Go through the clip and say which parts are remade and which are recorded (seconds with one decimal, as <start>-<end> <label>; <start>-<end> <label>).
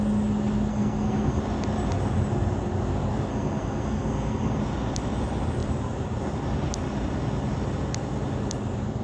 0.0-0.7 recorded; 0.7-1.4 remade; 1.4-3.3 recorded; 3.3-4.6 remade; 4.6-9.0 recorded